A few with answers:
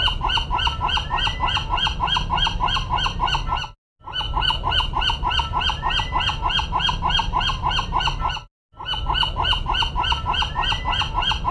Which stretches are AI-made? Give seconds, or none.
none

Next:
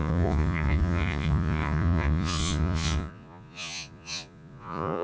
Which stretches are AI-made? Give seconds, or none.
0.0-5.0

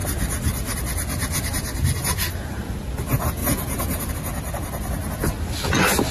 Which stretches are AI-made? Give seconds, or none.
3.4-4.1

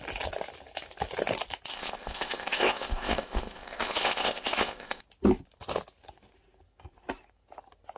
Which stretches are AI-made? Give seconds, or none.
1.7-5.0

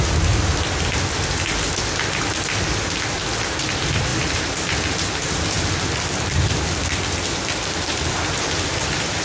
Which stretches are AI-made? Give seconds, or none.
none

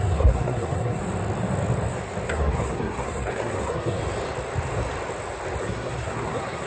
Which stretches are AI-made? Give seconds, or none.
0.0-1.0; 2.3-4.0; 5.6-6.7

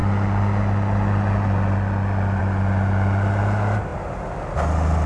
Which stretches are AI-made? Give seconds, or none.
none